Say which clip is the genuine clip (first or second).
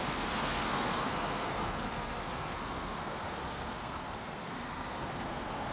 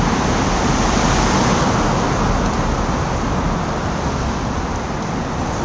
second